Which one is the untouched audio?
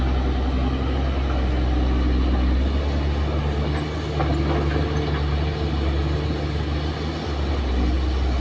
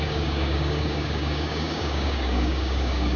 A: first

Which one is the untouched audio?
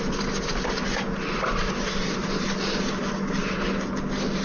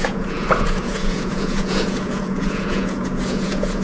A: first